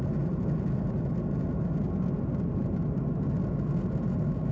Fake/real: real